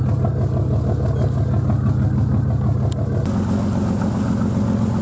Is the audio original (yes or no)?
yes